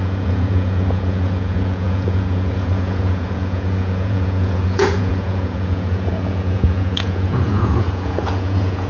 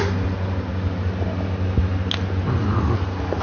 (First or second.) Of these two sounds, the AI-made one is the first